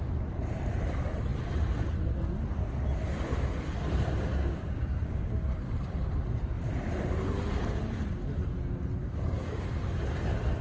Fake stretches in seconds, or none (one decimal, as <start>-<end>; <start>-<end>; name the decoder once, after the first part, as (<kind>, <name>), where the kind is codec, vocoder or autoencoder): 4.3-5.3 (codec, DAC); 9.0-9.6